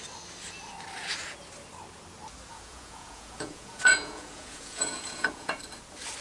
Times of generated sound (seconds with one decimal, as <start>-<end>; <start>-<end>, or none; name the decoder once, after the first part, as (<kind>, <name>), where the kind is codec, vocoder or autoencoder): 2.5-5.6 (vocoder, Vocos)